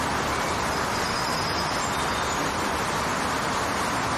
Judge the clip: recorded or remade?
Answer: recorded